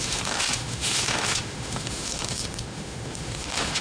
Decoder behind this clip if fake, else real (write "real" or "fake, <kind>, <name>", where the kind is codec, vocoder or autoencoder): fake, autoencoder, DAC-VAE